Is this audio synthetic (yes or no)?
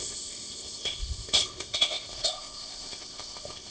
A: yes